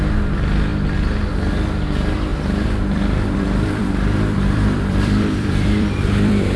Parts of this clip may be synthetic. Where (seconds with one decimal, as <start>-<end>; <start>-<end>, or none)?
2.3-6.6